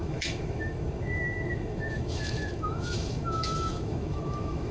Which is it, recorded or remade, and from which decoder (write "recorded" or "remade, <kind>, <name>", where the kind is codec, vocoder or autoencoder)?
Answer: remade, autoencoder, DAC-VAE